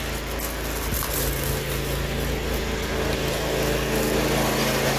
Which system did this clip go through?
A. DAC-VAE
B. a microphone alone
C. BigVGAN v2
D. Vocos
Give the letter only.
B